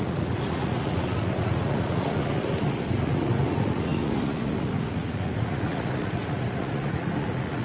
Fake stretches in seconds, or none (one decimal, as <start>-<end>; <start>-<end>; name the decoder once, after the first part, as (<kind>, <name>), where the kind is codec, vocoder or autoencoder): 0.0-7.6 (vocoder, Vocos)